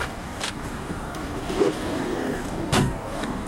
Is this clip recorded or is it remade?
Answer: remade